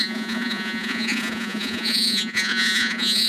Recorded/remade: remade